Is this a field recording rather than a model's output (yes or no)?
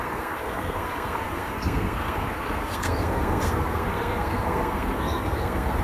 no